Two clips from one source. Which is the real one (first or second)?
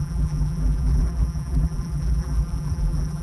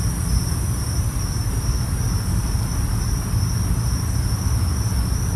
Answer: second